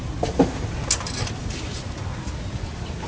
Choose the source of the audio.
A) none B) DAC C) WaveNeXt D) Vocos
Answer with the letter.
A